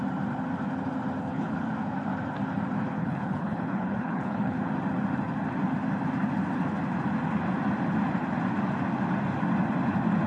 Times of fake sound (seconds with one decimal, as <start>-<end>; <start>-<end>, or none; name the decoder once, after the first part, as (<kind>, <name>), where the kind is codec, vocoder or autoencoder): 1.2-1.7 (codec, HILCodec); 3.0-4.6